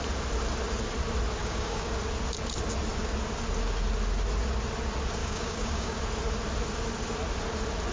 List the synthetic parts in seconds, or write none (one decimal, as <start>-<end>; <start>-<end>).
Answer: 1.4-1.9; 5.2-6.0